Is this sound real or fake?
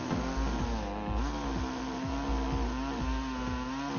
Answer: real